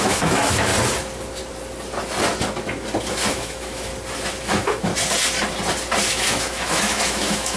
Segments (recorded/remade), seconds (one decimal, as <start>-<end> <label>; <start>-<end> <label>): 0.0-0.7 remade; 0.7-3.1 recorded; 3.1-3.9 remade; 3.9-4.4 recorded; 4.4-4.9 remade; 4.9-6.1 recorded; 6.1-7.6 remade